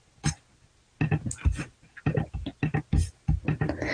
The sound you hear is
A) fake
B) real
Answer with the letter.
B